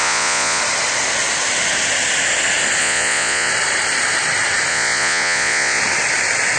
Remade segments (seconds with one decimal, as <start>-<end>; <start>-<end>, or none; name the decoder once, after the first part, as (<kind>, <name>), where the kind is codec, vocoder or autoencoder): 0.0-0.6 (vocoder, Vocos); 2.8-3.5; 4.7-5.8

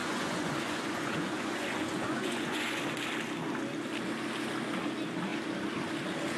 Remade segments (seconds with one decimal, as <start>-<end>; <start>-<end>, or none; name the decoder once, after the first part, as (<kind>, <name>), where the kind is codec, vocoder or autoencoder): 0.0-2.8 (vocoder, Vocos)

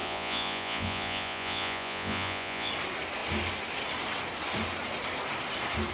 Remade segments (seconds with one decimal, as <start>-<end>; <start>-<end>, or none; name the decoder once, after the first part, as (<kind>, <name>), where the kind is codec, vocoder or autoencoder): 0.0-2.7 (vocoder, Vocos)

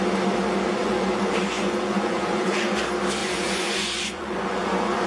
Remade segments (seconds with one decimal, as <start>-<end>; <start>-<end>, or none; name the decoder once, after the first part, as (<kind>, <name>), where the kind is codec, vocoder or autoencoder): 0.8-2.8 (vocoder, Vocos); 3.2-5.1

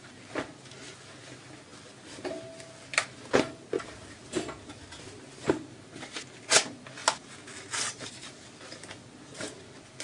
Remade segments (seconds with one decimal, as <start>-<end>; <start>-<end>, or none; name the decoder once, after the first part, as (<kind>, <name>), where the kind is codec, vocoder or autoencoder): none

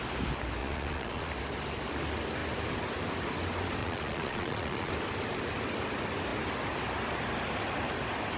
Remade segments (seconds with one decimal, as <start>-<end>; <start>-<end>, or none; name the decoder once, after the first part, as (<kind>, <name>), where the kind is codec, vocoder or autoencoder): 0.6-1.3 (vocoder, Vocos); 3.8-4.9

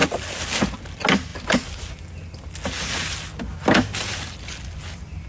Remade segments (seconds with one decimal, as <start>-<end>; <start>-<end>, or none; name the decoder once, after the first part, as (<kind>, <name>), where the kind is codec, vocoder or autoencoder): none